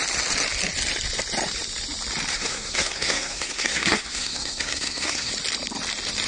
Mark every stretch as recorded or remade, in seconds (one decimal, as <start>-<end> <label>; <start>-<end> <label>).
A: 0.0-2.3 recorded; 2.3-5.3 remade; 5.3-6.3 recorded